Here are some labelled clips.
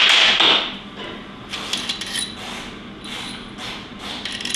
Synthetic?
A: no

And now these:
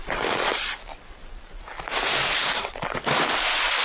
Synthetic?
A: no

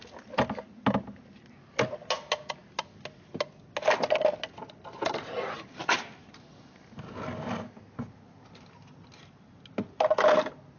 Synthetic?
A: no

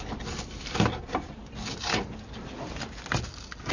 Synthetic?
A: no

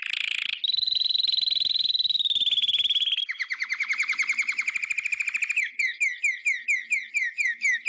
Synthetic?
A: no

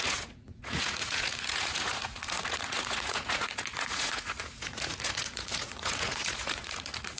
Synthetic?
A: yes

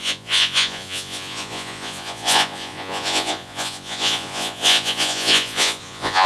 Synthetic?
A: yes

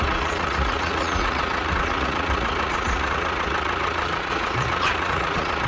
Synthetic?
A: yes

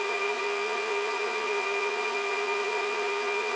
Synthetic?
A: yes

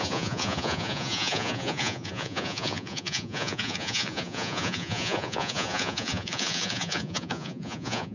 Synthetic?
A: yes